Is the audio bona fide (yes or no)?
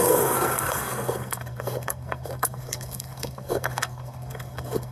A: no